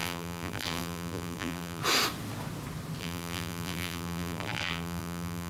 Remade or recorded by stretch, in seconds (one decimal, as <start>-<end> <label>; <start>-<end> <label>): 0.0-1.8 remade; 1.8-3.0 recorded; 3.0-5.5 remade